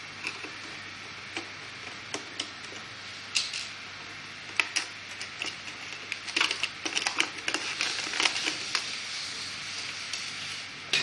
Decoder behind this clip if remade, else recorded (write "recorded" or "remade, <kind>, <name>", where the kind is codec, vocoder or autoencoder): recorded